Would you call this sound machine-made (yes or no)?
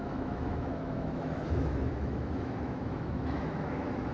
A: yes